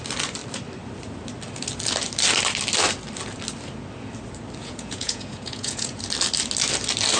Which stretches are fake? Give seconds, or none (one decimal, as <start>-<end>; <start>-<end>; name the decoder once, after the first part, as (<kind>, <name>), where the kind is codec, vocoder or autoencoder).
4.6-6.0 (vocoder, Vocos)